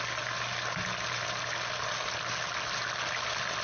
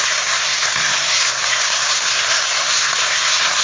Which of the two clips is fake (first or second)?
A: second